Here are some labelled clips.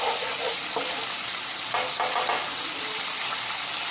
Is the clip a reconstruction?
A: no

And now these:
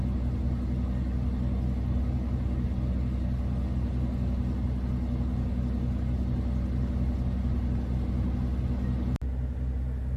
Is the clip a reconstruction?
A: no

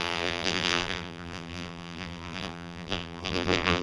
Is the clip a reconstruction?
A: yes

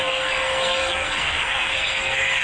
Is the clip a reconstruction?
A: yes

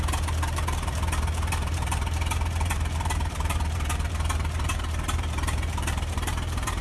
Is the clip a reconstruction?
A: yes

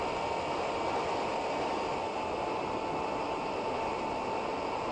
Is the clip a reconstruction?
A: no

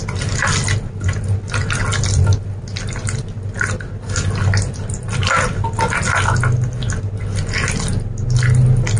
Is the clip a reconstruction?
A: no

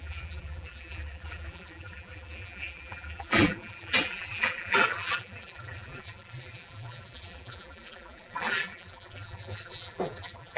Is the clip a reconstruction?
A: yes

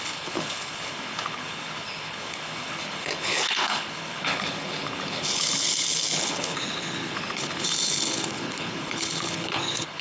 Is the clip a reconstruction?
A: yes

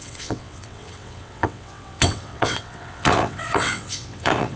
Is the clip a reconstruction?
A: yes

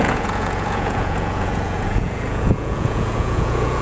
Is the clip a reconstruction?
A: yes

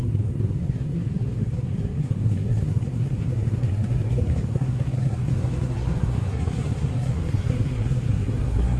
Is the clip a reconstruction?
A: yes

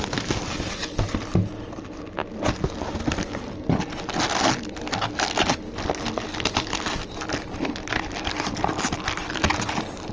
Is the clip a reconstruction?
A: no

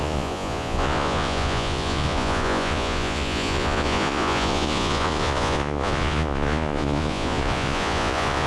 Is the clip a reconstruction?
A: yes